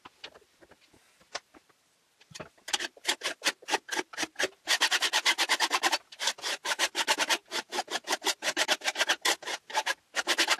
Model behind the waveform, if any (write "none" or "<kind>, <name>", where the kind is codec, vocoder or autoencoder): vocoder, BigVGAN v2